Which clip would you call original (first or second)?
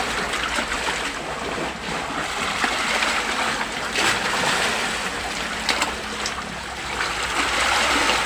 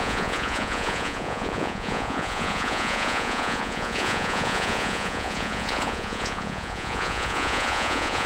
first